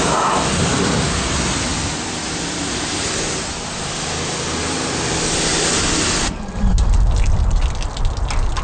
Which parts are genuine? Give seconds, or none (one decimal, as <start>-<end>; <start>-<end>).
0.0-8.6